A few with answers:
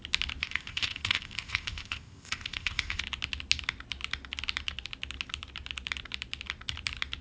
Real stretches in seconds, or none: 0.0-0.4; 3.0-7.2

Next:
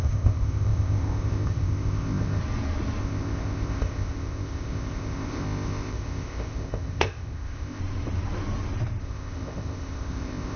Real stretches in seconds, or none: 2.4-3.0; 7.8-9.0

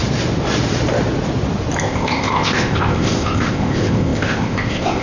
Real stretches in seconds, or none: 0.0-1.8

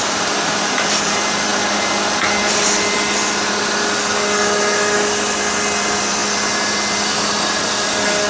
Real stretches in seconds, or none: 0.0-8.3

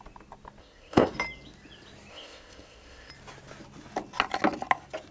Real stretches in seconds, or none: 0.0-0.6; 1.1-2.1; 3.1-5.1

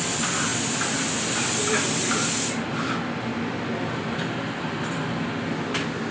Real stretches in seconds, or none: 0.0-6.1

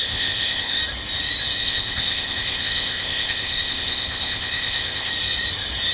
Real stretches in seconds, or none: 0.8-1.6; 5.1-5.9